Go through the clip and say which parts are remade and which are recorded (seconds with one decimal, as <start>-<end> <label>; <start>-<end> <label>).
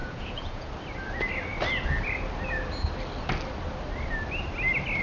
0.0-0.7 remade; 0.7-5.0 recorded